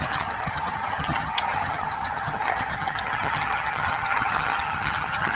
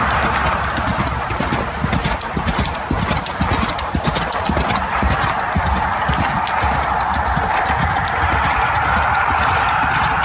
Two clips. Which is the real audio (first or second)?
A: second